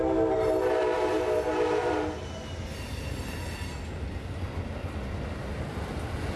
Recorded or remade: recorded